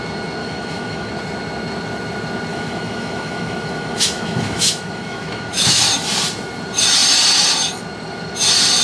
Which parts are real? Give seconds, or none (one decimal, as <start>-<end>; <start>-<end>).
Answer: 0.0-0.4; 1.1-2.5; 5.8-8.8